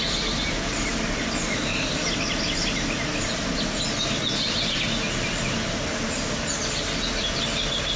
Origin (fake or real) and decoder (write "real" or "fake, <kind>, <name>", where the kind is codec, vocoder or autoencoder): real